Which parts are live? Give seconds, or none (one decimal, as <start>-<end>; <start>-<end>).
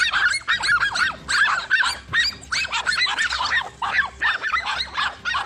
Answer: 0.0-5.5